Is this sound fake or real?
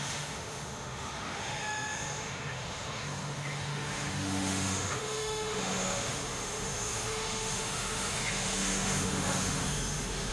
fake